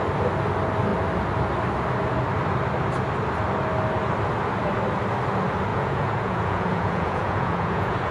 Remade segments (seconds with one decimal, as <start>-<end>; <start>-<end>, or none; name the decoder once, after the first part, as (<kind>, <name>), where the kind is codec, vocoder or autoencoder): 5.7-8.1 (vocoder, Vocos)